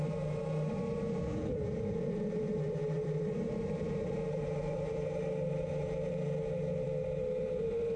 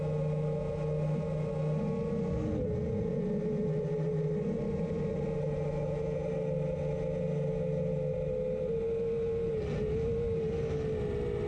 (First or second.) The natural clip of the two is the second